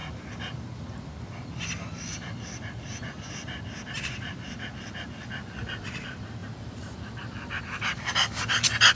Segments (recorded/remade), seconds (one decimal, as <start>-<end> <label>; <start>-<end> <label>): 0.0-3.9 recorded; 3.9-8.9 remade